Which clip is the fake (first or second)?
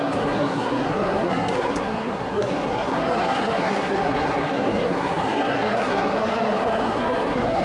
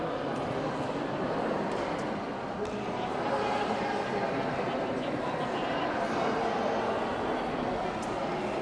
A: first